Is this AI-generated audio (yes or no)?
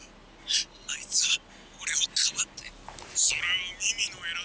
no